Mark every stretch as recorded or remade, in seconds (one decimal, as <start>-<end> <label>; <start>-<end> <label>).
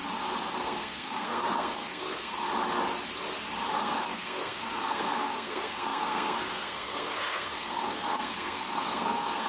0.0-0.6 recorded; 0.6-2.5 remade; 2.5-3.7 recorded; 3.7-9.5 remade